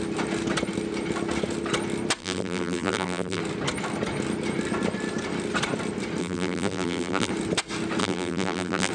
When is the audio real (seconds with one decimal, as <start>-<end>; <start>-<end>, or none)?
0.0-2.2; 3.4-6.2; 7.3-8.0